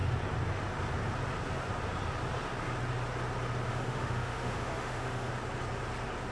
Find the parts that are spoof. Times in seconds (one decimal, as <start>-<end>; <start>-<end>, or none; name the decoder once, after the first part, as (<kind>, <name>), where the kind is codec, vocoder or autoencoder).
3.7-5.3 (autoencoder, DAC-VAE)